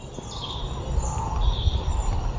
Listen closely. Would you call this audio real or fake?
fake